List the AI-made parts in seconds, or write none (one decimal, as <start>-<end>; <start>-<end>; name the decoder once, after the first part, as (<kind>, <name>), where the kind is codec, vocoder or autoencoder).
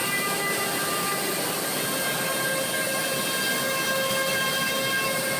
0.0-1.1 (vocoder, BigVGAN v2); 4.3-5.4